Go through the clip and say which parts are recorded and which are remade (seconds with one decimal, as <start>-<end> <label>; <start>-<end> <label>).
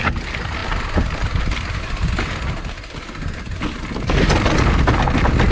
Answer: 0.0-5.5 recorded